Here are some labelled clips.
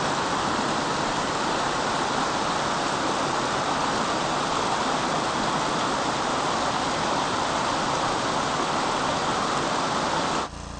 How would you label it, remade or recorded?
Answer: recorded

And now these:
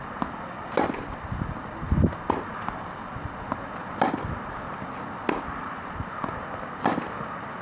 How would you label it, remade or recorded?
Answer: recorded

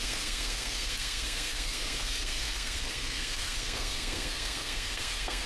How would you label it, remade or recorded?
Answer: remade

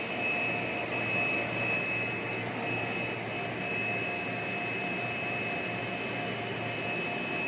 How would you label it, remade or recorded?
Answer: recorded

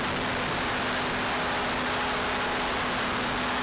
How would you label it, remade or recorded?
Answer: recorded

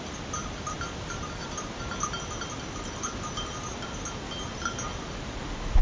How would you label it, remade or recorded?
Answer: recorded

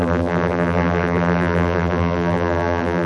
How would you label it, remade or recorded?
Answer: remade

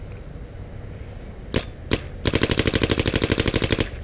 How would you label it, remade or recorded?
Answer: recorded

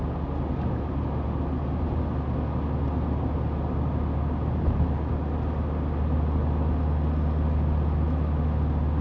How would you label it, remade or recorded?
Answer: recorded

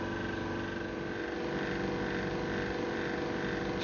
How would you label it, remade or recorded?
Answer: recorded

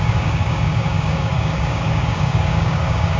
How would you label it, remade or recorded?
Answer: remade